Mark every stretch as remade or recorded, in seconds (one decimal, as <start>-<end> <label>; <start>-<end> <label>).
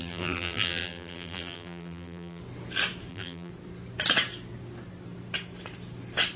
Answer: 0.0-2.4 remade; 2.4-3.1 recorded; 3.1-3.5 remade; 3.5-6.4 recorded